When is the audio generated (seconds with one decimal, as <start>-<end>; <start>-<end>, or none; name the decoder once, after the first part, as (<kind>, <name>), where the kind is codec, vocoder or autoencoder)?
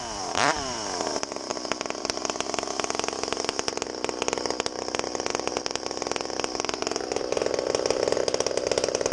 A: 0.0-1.5 (vocoder, BigVGAN v2); 2.0-9.1